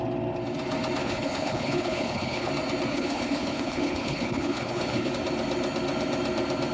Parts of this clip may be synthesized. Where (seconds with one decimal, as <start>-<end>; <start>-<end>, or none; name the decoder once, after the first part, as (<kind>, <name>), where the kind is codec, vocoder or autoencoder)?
1.0-2.5 (codec, HILCodec); 2.9-5.1